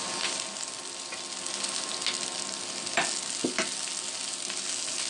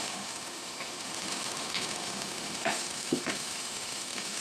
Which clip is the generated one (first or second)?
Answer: second